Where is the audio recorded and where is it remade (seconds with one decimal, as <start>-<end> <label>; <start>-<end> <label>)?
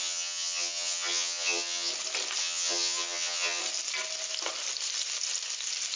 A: 0.0-1.9 remade; 1.9-2.4 recorded; 2.4-3.6 remade; 3.6-6.0 recorded